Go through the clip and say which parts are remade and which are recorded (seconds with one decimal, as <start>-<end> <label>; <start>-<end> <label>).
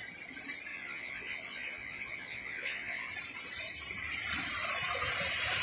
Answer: 0.0-0.7 recorded; 0.7-3.1 remade; 3.1-5.6 recorded